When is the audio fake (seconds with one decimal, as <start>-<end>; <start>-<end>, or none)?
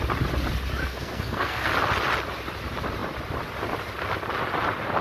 0.8-1.7